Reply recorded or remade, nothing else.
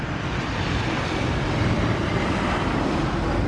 remade